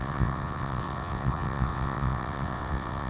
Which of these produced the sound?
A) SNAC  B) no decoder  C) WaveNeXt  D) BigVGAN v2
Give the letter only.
C